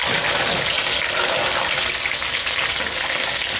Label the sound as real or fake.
real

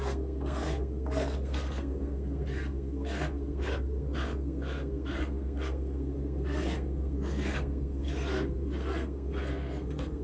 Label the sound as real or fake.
fake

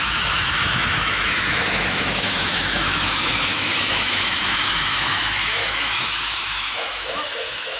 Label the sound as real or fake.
fake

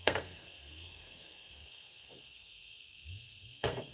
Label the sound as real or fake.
fake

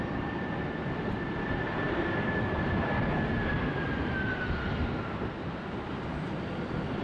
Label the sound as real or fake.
real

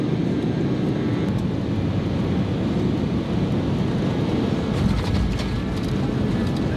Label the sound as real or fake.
real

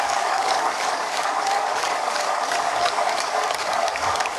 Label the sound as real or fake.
fake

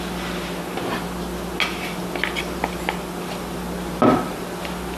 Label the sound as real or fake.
real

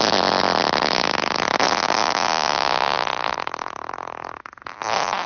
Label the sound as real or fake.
real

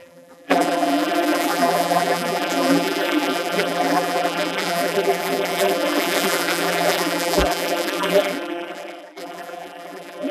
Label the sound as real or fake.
fake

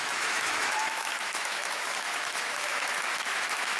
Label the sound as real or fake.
fake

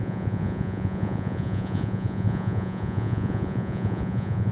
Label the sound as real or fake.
fake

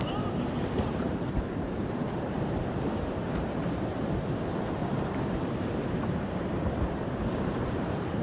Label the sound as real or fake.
fake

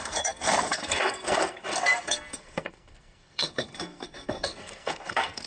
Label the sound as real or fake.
fake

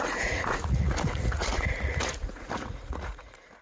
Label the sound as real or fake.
fake